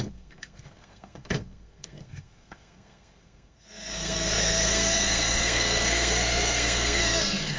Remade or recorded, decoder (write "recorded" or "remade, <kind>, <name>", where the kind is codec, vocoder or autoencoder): remade, codec, SNAC